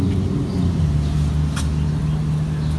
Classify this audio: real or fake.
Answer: real